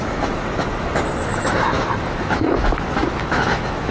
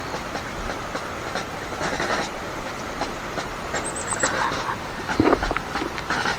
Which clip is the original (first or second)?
second